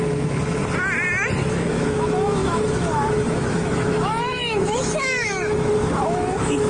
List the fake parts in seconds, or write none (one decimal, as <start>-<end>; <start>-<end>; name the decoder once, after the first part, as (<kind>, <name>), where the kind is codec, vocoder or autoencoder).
0.0-0.6 (autoencoder, DAC-VAE); 1.5-6.7